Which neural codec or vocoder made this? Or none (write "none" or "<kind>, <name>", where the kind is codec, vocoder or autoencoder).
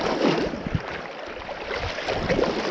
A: none